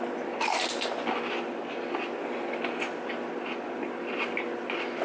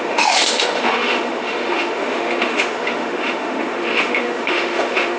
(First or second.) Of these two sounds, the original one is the first